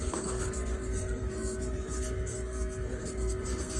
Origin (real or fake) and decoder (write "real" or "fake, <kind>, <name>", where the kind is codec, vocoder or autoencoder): fake, codec, SNAC